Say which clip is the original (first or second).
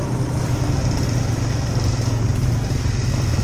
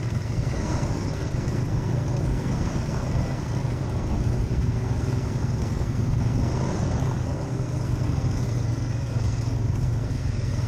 first